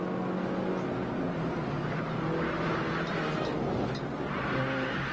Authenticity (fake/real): real